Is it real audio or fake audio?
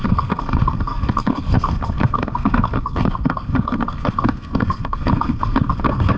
fake